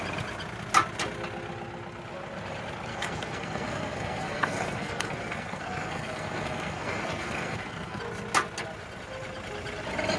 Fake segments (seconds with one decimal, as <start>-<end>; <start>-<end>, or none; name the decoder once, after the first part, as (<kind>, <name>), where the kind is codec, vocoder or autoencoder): 2.9-8.0 (codec, SNAC)